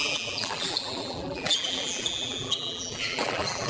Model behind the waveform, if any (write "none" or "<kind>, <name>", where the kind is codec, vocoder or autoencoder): vocoder, BigVGAN v2